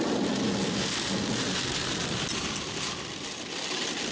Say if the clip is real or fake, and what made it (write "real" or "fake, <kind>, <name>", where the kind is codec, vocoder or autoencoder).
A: real